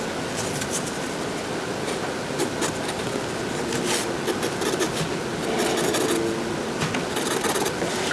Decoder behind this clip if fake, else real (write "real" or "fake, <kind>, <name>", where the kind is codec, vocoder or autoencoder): real